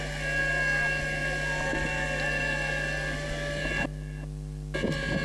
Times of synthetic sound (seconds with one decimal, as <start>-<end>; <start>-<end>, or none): none